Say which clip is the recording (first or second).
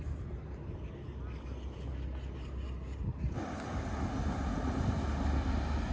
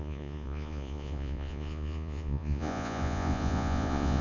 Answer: first